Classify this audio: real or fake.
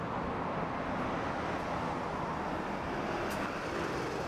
real